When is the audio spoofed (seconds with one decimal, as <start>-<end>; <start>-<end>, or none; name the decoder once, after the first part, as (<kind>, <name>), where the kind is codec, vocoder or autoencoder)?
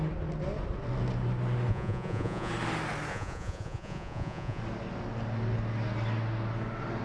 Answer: 1.7-2.5 (vocoder, Vocos); 3.1-4.6